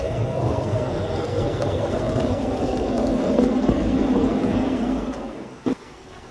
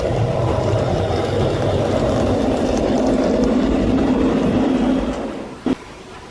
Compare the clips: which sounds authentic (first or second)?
second